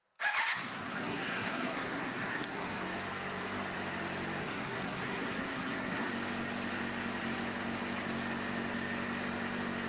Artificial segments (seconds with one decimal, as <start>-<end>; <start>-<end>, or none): 0.5-2.8; 4.4-6.1